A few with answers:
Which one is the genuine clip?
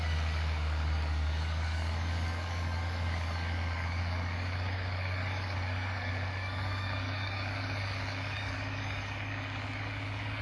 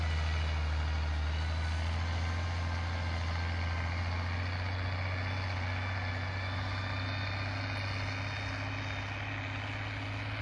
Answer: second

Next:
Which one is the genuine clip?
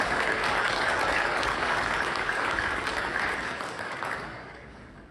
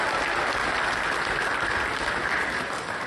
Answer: second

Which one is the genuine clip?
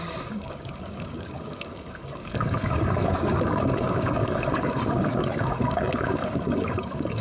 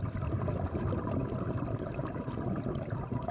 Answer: second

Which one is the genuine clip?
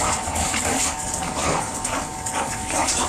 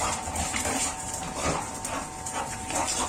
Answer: second